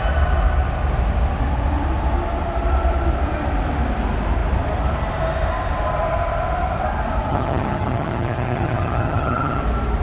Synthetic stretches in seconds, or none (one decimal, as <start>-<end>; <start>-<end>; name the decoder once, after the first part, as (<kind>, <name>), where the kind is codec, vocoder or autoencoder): 7.3-9.6 (vocoder, HiFi-GAN)